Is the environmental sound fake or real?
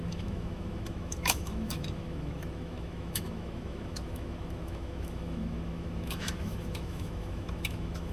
fake